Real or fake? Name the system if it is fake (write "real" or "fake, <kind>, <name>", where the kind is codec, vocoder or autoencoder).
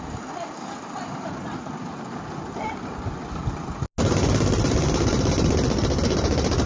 real